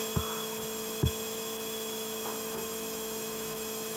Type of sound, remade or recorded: remade